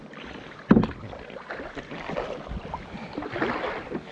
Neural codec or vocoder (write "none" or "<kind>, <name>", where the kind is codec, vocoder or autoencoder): none